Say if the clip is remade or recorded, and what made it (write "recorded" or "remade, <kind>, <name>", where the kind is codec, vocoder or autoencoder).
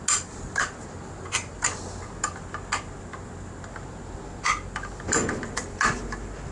recorded